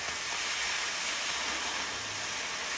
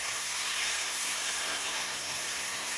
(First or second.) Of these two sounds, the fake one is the second